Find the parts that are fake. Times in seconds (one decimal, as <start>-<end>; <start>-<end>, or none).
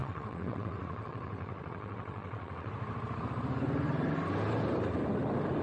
0.0-2.7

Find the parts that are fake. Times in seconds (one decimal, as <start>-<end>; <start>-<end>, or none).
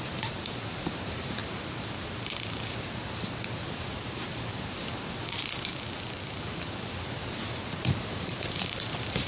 0.0-5.7; 6.4-9.3